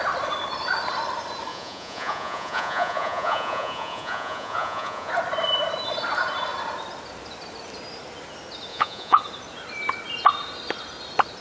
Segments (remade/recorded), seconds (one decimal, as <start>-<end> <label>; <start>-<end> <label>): 0.0-1.5 recorded; 1.5-5.1 remade; 5.1-8.7 recorded; 8.7-9.2 remade; 9.2-11.4 recorded